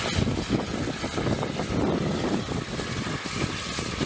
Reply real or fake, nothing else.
real